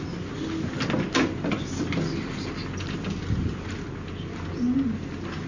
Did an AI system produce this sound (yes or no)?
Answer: no